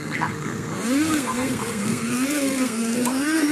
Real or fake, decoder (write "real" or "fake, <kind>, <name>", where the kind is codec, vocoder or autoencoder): fake, codec, SNAC